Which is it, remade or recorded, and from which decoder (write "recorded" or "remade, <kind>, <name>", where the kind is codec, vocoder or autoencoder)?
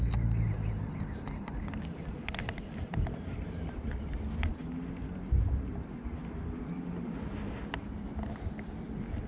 recorded